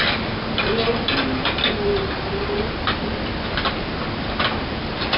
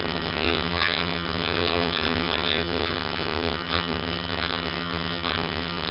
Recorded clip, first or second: first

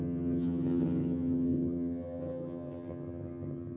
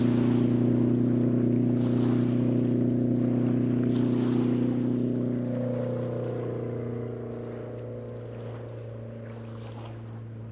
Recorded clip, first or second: second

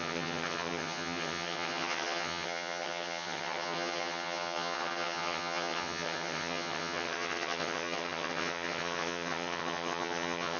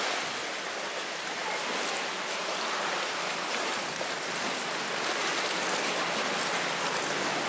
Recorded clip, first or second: second